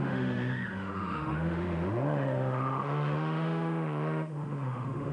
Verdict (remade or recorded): remade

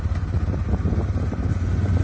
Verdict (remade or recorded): recorded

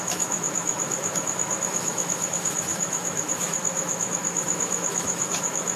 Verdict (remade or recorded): remade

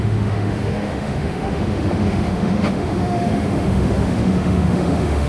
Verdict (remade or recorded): remade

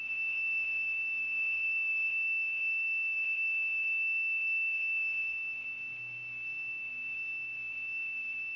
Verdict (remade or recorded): remade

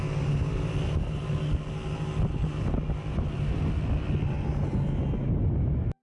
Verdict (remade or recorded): recorded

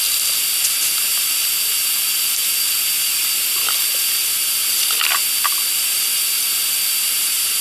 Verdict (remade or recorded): recorded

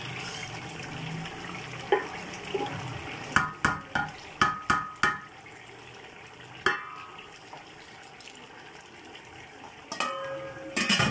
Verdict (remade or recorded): recorded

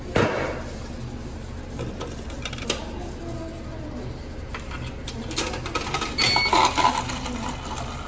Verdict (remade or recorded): recorded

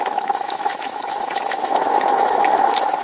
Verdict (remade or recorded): remade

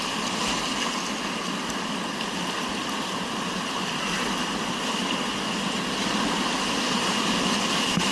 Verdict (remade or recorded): recorded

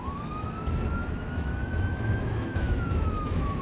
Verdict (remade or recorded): remade